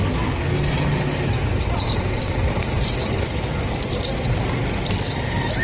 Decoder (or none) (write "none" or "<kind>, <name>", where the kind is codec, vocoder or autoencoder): none